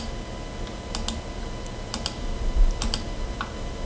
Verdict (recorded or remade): recorded